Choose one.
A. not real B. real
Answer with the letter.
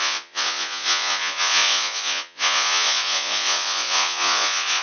A